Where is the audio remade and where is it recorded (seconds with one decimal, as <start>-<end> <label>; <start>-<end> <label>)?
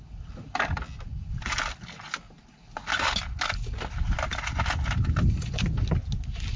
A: 0.0-6.6 recorded